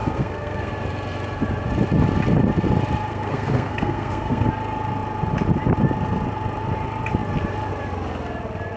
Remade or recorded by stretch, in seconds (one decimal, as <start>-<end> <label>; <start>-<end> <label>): 0.0-0.7 remade; 0.7-3.1 recorded; 3.1-4.5 remade; 4.5-8.8 recorded